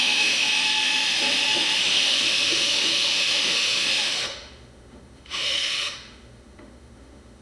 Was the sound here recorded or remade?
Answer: remade